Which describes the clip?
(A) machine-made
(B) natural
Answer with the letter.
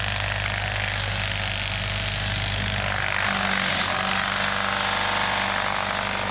B